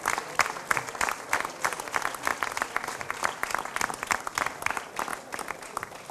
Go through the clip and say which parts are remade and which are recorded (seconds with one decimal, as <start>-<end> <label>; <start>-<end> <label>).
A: 0.0-6.1 recorded